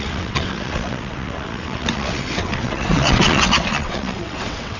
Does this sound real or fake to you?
fake